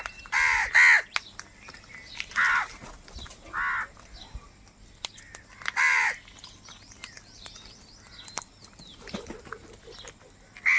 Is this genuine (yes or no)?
yes